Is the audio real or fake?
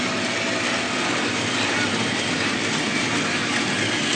real